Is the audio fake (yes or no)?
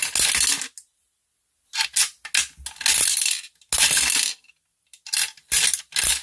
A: no